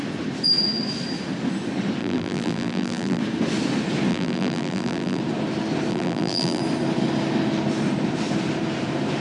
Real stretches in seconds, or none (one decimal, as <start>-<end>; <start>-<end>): 0.0-2.0; 3.2-4.1; 5.2-5.9; 6.6-9.2